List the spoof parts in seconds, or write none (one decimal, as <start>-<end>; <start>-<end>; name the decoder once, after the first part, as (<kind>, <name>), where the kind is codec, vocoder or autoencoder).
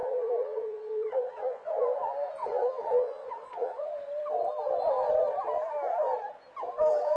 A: 0.0-1.7 (vocoder, Vocos); 2.4-3.9